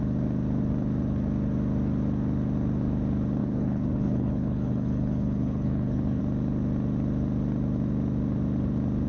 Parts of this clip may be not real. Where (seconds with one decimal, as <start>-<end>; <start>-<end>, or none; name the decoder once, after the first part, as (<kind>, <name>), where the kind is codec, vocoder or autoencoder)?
3.4-6.2 (codec, HILCodec)